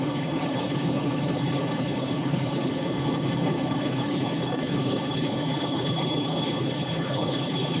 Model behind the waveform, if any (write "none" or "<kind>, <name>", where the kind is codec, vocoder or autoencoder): codec, HILCodec